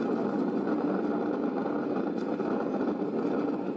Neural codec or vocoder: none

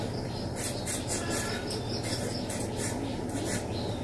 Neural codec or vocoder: none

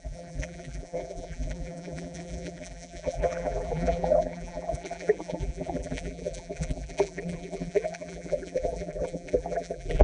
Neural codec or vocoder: vocoder, BigVGAN v2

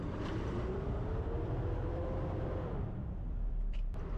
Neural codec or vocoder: vocoder, BigVGAN v2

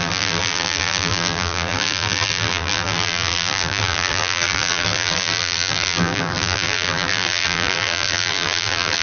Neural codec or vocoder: vocoder, BigVGAN v2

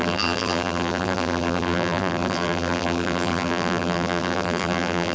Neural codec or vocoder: vocoder, BigVGAN v2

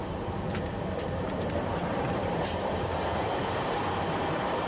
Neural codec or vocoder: vocoder, BigVGAN v2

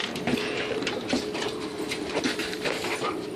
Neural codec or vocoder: vocoder, BigVGAN v2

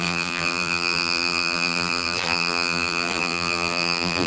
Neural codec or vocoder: vocoder, BigVGAN v2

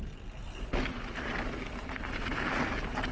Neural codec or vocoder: none